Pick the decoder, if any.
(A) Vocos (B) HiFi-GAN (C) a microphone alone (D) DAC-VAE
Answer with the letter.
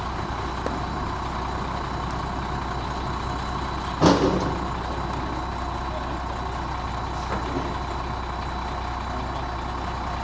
C